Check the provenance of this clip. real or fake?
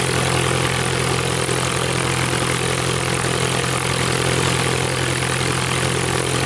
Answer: real